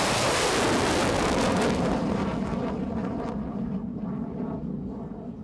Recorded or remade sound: recorded